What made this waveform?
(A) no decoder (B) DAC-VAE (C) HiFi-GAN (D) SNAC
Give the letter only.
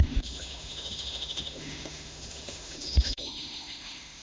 B